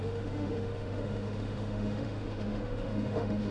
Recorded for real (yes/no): no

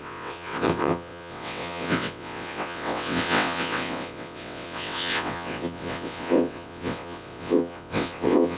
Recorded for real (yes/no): no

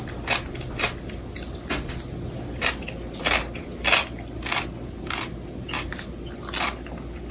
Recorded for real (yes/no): yes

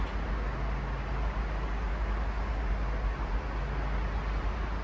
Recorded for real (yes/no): yes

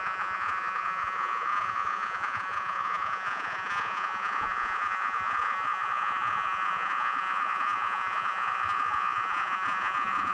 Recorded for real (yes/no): no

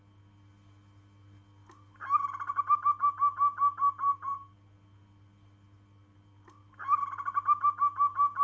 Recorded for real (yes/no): yes